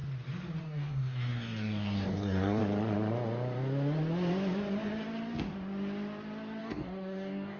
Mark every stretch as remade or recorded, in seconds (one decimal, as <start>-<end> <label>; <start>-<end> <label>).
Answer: 0.0-0.6 recorded; 0.6-2.6 remade; 2.6-6.6 recorded; 6.6-7.6 remade